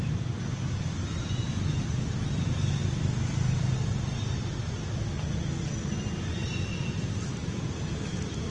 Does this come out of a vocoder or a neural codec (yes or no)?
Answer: no